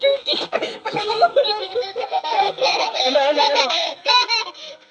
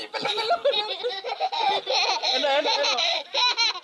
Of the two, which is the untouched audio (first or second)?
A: second